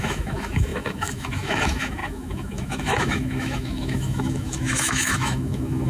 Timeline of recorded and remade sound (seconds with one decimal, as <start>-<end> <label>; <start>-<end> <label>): 0.0-5.9 remade